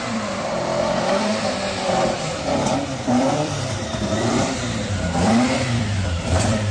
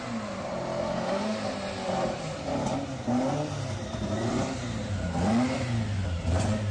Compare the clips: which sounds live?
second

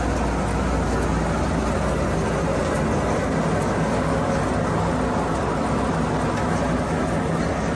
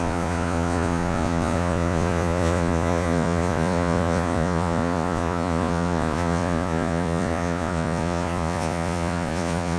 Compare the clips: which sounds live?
first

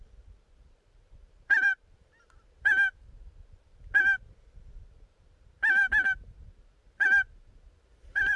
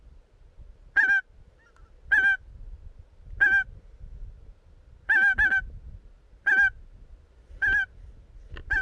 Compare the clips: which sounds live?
second